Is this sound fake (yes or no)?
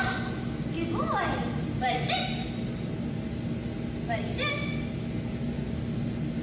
no